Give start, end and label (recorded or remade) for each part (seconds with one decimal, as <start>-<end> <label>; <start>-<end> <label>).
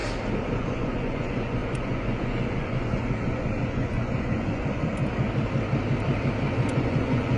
0.0-0.6 recorded; 0.6-5.0 remade; 5.0-6.5 recorded; 6.5-7.4 remade